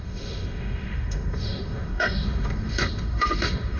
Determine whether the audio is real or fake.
fake